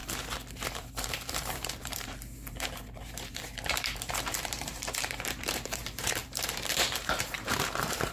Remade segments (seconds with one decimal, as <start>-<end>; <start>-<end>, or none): 0.7-8.1